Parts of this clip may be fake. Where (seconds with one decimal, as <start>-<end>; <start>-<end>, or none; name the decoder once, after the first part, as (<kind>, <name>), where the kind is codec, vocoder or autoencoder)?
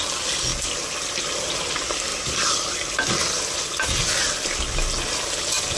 none